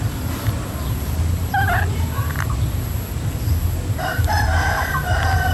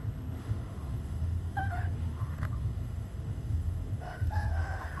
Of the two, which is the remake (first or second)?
second